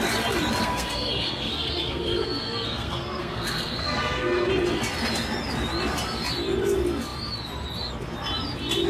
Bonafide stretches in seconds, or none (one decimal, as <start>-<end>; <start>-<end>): 0.0-0.6; 4.5-8.9